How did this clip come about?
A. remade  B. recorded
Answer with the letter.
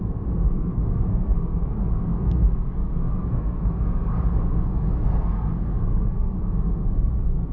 A